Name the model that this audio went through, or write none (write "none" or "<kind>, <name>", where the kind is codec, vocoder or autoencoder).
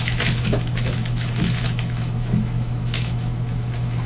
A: autoencoder, DAC-VAE